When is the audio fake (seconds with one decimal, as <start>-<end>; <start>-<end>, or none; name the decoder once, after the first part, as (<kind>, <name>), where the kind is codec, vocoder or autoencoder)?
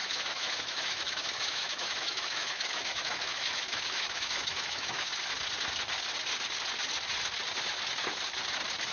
0.0-5.1 (autoencoder, DAC-VAE)